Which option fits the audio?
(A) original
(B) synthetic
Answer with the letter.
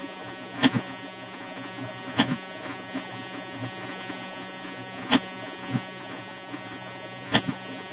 B